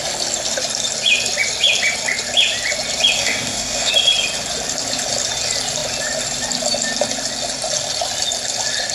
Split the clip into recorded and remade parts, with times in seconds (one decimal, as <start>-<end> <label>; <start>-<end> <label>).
0.0-3.2 recorded; 3.2-3.9 remade; 3.9-8.9 recorded